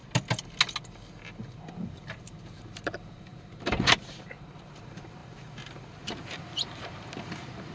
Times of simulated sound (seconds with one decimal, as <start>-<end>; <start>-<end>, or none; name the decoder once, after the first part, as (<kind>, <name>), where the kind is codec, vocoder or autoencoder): 1.7-7.7 (vocoder, BigVGAN v2)